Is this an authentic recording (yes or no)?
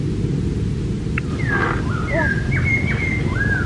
yes